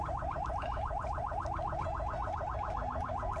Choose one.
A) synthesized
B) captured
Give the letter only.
A